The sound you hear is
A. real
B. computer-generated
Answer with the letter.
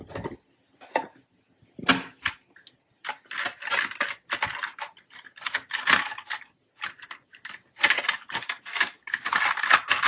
A